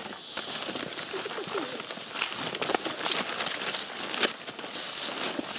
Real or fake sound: real